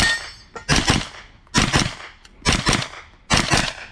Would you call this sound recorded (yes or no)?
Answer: yes